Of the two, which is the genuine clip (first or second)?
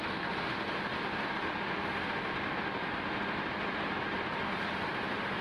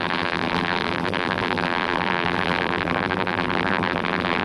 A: first